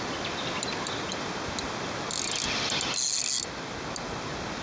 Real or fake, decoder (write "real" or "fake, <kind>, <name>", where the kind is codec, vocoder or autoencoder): real